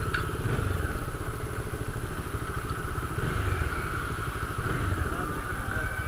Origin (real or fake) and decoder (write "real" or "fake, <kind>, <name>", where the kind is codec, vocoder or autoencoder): real